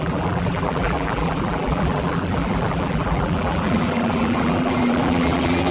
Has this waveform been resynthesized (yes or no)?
yes